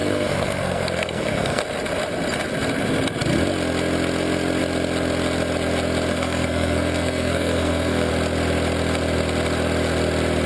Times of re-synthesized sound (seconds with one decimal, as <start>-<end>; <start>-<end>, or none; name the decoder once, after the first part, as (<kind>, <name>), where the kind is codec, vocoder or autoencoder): 0.0-1.6 (codec, SNAC); 6.1-8.1